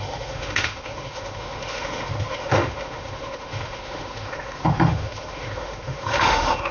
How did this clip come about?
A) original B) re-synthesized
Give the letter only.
B